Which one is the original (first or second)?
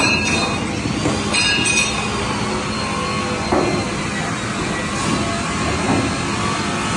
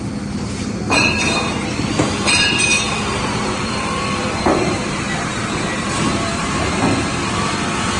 first